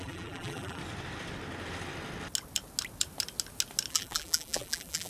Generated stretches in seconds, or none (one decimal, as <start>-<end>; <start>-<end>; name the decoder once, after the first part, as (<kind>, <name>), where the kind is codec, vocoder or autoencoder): 0.0-0.8 (vocoder, BigVGAN v2); 3.9-5.1